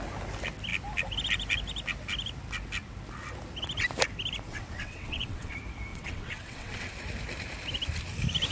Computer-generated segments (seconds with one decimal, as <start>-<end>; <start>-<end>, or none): 4.5-5.5; 5.9-6.9